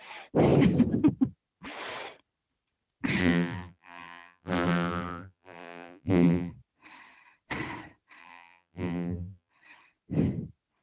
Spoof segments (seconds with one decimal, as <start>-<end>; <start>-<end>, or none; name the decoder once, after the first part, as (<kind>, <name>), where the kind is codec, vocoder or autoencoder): 3.2-6.5 (vocoder, BigVGAN v2); 8.2-9.5